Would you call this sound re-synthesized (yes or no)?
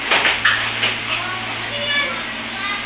no